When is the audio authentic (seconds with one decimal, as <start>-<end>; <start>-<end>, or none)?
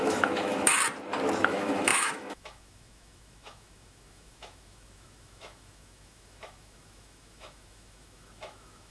0.7-1.4